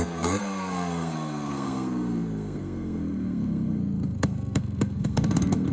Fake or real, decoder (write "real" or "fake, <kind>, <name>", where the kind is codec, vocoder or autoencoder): fake, codec, SNAC